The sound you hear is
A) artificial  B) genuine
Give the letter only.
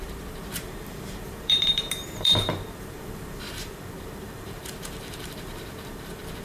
A